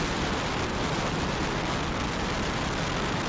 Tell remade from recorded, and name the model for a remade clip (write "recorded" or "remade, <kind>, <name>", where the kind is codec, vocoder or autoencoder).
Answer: recorded